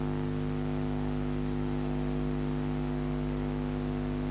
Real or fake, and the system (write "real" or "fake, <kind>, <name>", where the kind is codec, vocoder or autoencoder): real